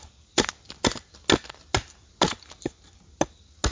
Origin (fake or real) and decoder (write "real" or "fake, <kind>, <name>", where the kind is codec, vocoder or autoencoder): real